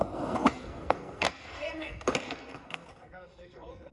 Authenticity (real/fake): fake